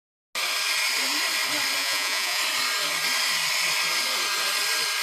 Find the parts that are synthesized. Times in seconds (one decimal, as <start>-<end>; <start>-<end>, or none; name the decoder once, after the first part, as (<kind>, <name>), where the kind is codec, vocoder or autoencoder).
1.8-2.4 (vocoder, Vocos)

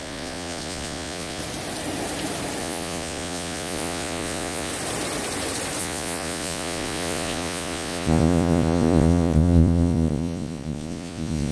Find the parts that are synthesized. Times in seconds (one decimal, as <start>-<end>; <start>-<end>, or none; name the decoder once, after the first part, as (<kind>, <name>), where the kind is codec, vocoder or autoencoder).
0.0-1.4 (vocoder, Vocos); 2.6-4.7; 5.8-11.5

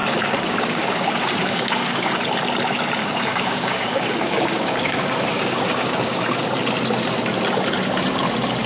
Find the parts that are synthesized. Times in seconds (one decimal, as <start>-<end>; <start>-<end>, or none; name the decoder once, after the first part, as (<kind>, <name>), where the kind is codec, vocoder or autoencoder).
0.0-2.1 (codec, DAC); 3.0-6.3

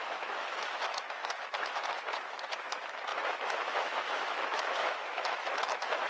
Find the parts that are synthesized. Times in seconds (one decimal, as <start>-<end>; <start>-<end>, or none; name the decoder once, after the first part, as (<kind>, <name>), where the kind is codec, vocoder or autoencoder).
0.0-6.1 (autoencoder, DAC-VAE)

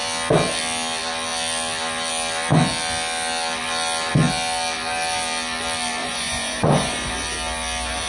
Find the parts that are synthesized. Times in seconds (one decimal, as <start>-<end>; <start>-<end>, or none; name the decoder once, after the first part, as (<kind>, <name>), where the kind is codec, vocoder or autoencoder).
6.0-7.1 (vocoder, Vocos)

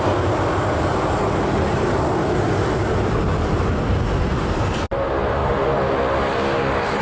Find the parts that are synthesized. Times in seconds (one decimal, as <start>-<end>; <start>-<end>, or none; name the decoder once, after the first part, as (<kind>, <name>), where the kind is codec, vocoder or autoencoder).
none

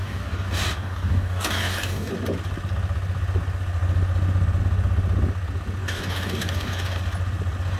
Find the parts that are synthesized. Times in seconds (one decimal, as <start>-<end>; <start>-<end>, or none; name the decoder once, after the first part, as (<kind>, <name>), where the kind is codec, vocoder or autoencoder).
0.0-2.1 (codec, DAC); 5.8-7.0

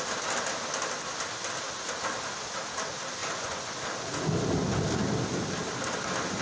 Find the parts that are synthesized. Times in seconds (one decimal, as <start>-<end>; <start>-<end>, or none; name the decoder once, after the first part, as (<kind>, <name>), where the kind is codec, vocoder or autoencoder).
3.2-3.7 (vocoder, Vocos)